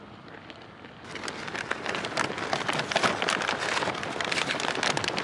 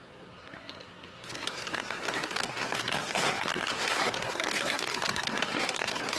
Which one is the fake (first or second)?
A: second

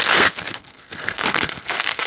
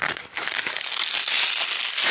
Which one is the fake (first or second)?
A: first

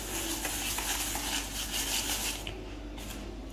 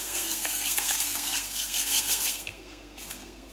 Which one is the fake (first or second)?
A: second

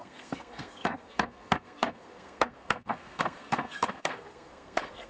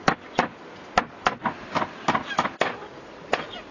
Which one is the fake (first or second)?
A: first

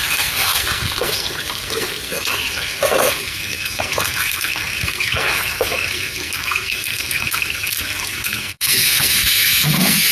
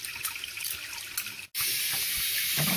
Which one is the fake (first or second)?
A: first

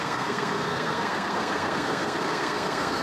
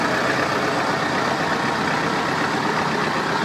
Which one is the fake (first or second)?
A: first